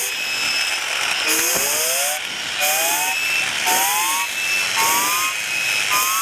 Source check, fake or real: real